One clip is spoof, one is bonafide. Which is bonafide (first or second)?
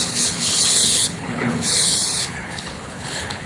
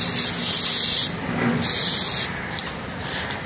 second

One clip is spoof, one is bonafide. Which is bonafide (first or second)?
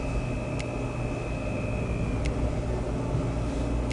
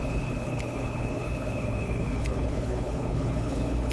first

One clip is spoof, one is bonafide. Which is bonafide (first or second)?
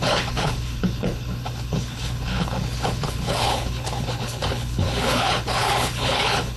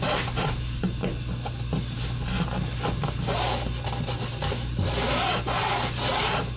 second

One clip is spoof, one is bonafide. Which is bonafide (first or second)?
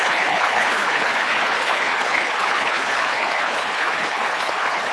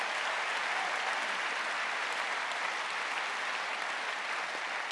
second